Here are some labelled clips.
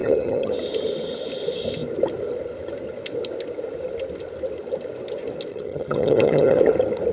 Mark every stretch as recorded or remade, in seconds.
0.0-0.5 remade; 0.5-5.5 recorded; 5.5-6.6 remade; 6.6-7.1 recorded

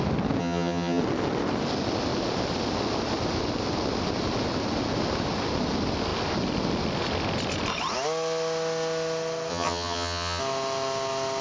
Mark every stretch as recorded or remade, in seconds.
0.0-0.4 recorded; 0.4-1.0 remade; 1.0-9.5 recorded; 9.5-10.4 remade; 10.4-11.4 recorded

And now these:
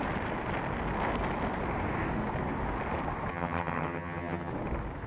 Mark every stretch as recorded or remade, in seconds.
0.0-3.3 recorded; 3.3-4.5 remade; 4.5-5.1 recorded